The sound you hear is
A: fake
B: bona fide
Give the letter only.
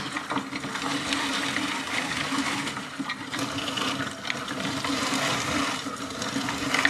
B